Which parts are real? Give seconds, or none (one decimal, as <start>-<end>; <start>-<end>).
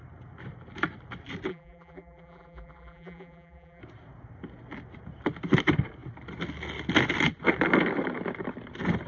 0.0-1.5; 3.8-9.1